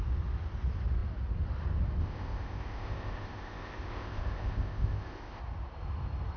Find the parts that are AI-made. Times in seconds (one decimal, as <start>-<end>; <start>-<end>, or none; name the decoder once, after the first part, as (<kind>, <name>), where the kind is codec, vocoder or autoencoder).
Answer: 2.0-5.4 (codec, ZipCodec)